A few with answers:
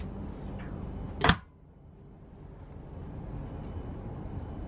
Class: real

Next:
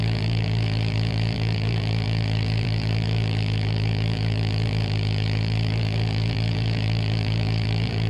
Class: fake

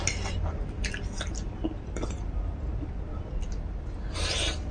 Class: real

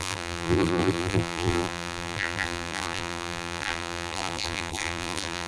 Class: fake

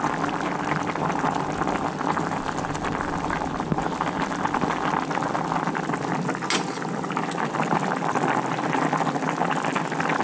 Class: real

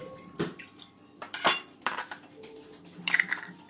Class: fake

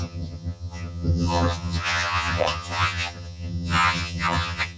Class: fake